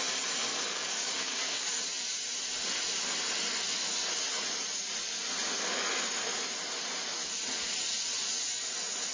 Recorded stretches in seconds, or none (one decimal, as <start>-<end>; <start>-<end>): 0.0-0.5; 1.7-9.1